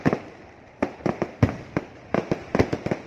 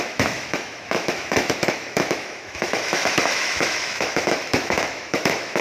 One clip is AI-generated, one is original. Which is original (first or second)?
first